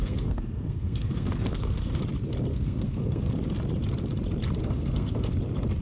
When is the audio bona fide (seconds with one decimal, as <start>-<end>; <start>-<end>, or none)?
2.0-2.5; 3.3-4.6; 5.3-5.8